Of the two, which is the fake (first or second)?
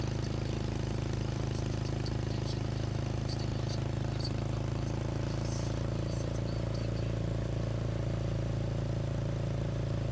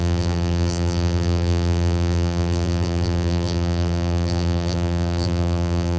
second